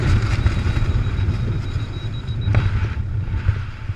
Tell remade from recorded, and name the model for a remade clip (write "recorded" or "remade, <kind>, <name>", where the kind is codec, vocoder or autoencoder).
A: recorded